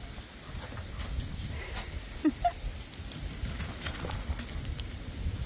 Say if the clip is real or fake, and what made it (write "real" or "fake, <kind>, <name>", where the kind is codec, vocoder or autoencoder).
real